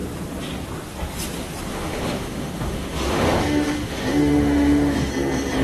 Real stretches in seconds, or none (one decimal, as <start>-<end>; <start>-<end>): 0.0-1.7; 5.1-5.6